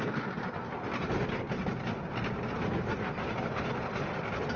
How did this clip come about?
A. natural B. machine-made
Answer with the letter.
A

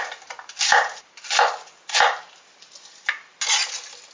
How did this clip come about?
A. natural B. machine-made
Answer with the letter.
A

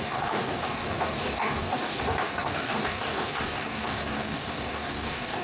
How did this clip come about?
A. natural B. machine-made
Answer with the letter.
B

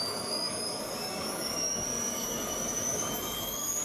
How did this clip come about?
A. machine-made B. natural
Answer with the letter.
A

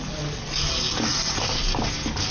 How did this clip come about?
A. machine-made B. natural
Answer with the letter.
B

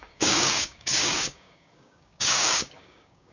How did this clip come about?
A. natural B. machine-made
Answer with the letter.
B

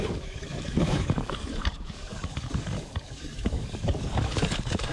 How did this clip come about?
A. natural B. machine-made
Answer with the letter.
B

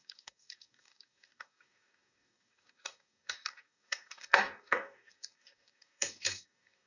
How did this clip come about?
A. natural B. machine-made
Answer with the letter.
B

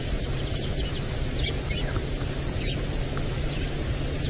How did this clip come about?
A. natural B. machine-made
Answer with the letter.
A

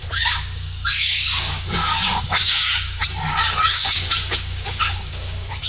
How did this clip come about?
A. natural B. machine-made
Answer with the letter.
B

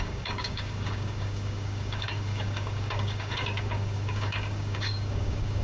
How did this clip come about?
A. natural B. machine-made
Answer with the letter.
B